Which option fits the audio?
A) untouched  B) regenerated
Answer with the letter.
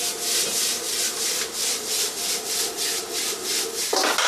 A